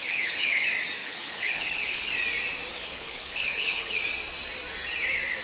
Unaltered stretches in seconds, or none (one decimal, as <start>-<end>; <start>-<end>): 0.6-1.0; 2.1-2.7; 4.0-5.4